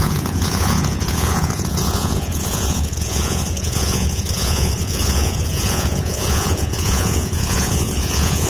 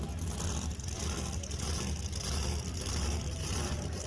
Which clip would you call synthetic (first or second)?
first